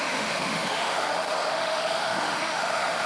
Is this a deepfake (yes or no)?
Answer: yes